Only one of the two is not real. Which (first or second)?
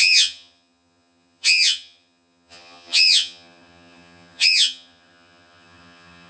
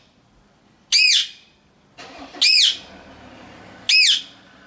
first